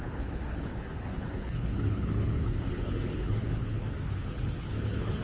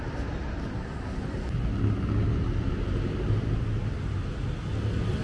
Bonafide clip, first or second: second